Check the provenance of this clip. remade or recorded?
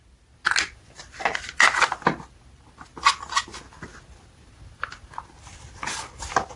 recorded